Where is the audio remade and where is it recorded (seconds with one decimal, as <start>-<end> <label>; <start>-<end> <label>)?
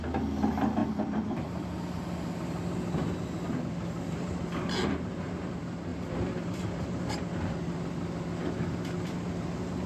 0.0-5.9 recorded; 5.9-7.1 remade; 7.1-9.9 recorded